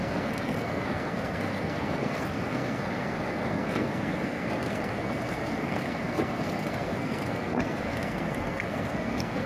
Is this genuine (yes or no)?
no